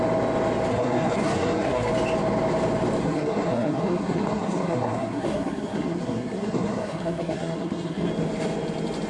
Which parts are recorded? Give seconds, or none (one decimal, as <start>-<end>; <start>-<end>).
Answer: 0.0-0.7; 1.9-3.0; 8.1-9.1